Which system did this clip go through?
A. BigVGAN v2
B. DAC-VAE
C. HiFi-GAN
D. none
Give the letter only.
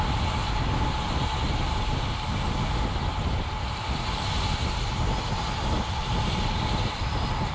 D